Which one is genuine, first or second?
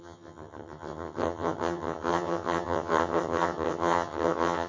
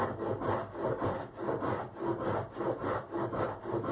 second